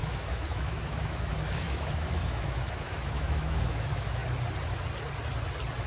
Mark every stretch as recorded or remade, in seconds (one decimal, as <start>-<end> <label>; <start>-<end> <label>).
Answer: 0.0-4.2 remade; 4.2-5.9 recorded